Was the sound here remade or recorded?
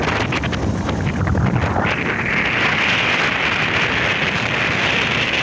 recorded